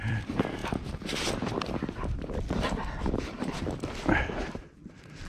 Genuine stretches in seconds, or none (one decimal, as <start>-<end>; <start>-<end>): 0.6-3.0